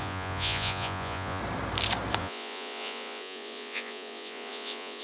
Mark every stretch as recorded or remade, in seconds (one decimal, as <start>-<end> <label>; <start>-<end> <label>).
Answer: 0.0-1.4 remade; 1.4-2.2 recorded; 2.2-5.0 remade